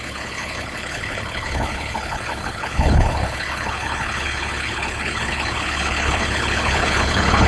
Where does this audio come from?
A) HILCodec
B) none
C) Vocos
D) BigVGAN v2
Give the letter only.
A